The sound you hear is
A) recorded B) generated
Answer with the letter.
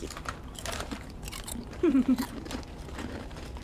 B